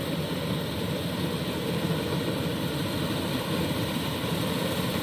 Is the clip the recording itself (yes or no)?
no